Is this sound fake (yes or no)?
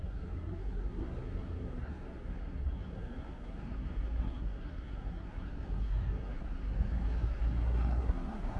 yes